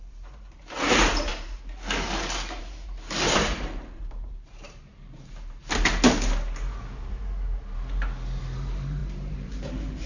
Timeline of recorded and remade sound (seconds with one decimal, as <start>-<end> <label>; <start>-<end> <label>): 0.0-1.3 remade; 1.3-2.6 recorded; 2.6-5.6 remade; 5.6-8.4 recorded; 8.4-10.1 remade